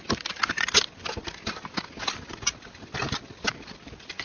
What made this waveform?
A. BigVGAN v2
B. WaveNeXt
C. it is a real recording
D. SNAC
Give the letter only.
C